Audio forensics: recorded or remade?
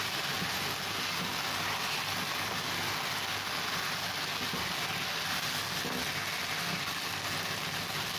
recorded